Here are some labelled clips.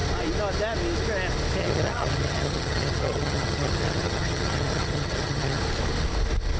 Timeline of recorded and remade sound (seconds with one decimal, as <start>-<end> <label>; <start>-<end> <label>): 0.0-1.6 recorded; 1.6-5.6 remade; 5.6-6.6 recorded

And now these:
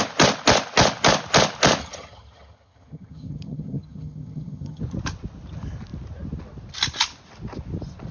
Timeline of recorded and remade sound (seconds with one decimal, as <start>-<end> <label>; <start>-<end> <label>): 0.0-1.8 recorded; 1.8-4.8 remade; 4.8-8.1 recorded

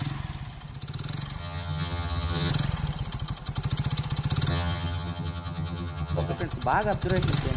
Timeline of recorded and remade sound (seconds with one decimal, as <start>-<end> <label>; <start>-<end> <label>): 0.0-1.4 recorded; 1.4-2.5 remade; 2.5-4.5 recorded; 4.5-6.4 remade; 6.4-7.6 recorded

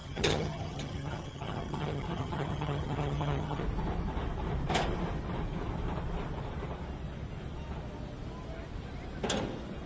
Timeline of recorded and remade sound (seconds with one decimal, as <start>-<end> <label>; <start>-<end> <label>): 0.0-3.6 remade; 3.6-9.9 recorded

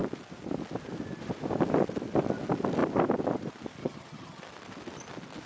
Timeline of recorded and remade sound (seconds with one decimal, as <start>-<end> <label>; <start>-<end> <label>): 0.0-3.8 recorded; 3.8-4.4 remade; 4.4-5.5 recorded